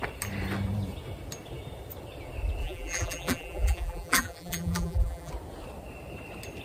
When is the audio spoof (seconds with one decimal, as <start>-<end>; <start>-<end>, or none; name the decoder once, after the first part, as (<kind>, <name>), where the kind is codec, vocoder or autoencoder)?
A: 2.6-5.3 (vocoder, BigVGAN v2)